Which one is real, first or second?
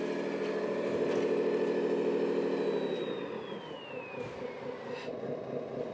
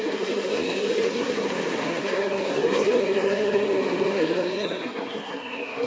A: first